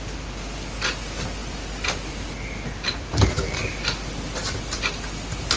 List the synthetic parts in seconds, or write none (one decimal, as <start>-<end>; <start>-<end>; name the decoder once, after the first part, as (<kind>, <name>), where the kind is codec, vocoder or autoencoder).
none